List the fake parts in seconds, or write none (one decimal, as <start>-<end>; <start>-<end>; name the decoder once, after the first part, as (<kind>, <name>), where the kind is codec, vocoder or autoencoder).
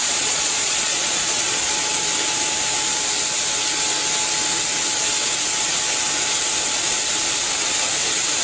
0.0-1.7 (vocoder, Vocos)